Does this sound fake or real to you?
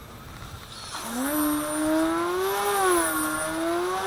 real